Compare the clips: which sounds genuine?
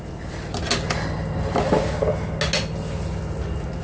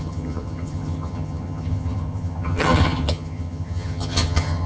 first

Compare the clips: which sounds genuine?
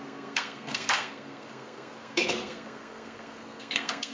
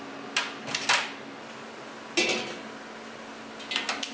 second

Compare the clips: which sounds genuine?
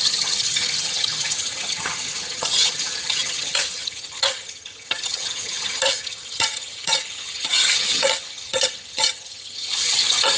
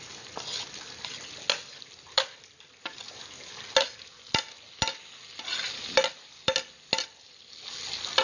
second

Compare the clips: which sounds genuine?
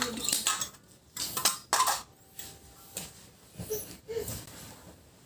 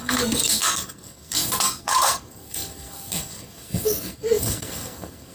first